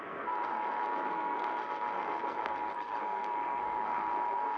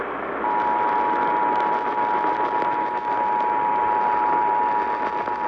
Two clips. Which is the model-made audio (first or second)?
first